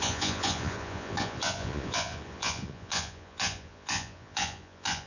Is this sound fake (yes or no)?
yes